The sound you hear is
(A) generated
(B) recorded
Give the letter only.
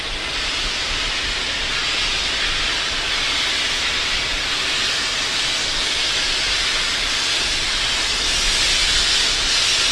B